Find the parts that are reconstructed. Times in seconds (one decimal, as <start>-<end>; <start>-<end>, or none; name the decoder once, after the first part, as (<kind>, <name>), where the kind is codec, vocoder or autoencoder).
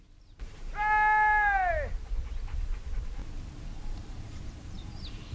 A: 0.0-0.7 (vocoder, BigVGAN v2); 2.5-3.2; 3.8-5.3